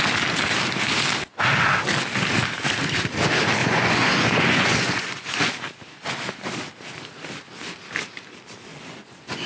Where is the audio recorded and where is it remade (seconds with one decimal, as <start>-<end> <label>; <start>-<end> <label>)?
0.0-3.6 recorded; 3.6-5.5 remade; 5.5-8.7 recorded; 8.7-9.5 remade

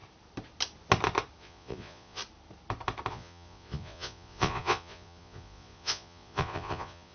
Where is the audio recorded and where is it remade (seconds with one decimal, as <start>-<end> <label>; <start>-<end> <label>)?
0.0-1.4 recorded; 1.4-2.2 remade; 2.2-3.1 recorded; 3.1-7.1 remade

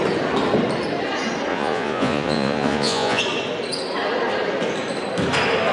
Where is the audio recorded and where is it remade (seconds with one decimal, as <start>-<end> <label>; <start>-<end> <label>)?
0.0-1.5 recorded; 1.5-3.2 remade; 3.2-5.7 recorded

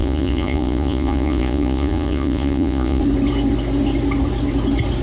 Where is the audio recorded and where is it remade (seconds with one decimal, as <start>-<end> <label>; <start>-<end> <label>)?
0.0-3.0 remade; 3.0-5.0 recorded

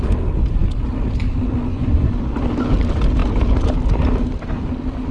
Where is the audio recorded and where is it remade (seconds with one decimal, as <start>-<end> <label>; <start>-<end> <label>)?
0.0-1.7 recorded; 1.7-2.2 remade; 2.2-5.1 recorded

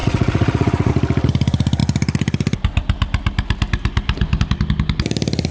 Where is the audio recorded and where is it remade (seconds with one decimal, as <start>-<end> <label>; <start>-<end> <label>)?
0.0-0.9 remade; 0.9-5.5 recorded

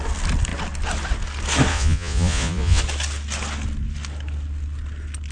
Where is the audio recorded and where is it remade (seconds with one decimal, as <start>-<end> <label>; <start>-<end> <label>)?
0.0-1.7 recorded; 1.7-2.8 remade; 2.8-5.3 recorded